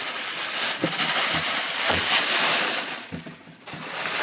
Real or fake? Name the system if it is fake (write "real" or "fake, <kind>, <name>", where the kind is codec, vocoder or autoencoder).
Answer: real